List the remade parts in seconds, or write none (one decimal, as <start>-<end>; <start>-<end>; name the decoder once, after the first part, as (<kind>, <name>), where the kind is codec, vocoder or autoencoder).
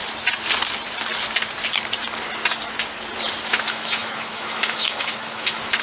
3.5-5.8 (autoencoder, DAC-VAE)